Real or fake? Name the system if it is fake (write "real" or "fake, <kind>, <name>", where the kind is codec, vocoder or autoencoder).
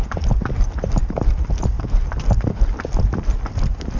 real